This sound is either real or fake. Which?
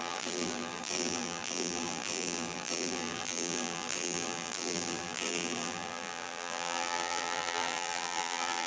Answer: fake